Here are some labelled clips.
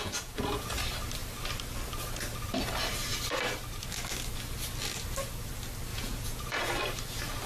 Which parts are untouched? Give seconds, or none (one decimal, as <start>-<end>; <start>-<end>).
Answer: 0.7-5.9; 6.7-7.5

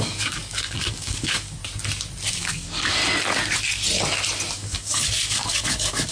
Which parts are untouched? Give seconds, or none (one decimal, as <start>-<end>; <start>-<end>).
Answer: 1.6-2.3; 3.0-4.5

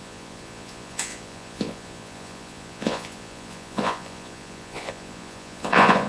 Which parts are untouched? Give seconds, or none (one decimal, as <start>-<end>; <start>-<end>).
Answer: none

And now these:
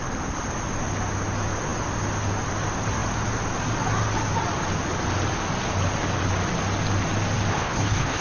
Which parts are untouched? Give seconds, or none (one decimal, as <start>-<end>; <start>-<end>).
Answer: 0.0-7.5

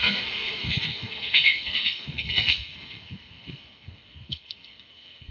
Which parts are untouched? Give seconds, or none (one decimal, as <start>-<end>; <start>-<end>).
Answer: none

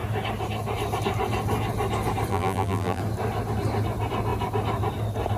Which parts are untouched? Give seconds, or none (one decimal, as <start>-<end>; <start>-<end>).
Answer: 0.0-2.3; 3.0-5.4

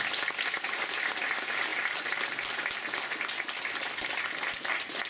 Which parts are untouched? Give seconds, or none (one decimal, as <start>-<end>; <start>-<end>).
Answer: 0.0-5.1